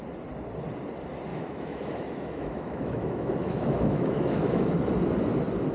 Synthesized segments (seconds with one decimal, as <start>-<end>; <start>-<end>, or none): 1.3-4.7